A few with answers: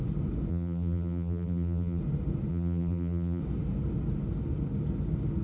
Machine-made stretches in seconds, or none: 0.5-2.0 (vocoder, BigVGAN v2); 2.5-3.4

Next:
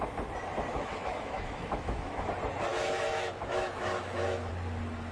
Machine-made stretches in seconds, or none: 0.7-2.3 (autoencoder, DAC-VAE); 2.7-4.5